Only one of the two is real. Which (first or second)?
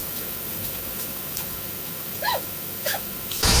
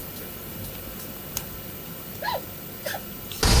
second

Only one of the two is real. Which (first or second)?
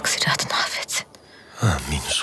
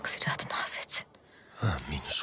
first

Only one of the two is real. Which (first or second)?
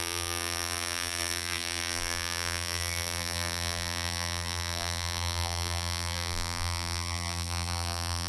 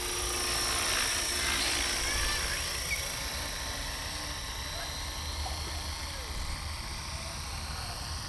second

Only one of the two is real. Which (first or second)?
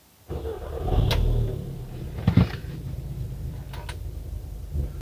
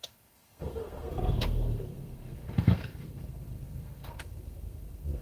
first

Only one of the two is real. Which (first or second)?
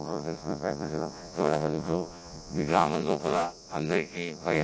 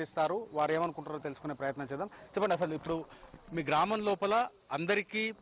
second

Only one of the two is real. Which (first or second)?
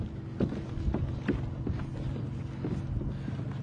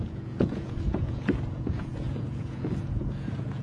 first